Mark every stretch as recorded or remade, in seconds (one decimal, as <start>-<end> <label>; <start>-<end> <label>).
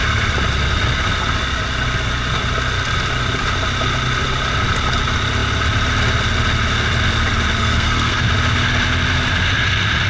0.0-7.6 recorded; 7.6-8.2 remade; 8.2-10.1 recorded